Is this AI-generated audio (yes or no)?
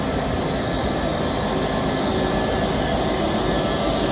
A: no